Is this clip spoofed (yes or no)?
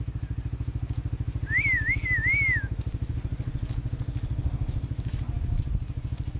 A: no